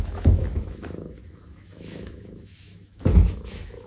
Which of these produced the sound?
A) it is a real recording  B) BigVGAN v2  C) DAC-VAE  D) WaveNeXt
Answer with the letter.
C